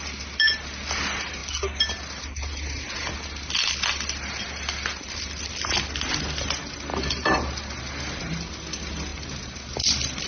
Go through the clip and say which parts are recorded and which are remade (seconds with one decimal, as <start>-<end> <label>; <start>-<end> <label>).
0.0-10.3 recorded